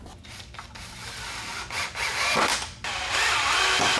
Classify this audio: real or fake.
real